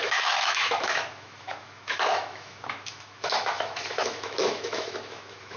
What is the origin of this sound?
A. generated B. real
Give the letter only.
A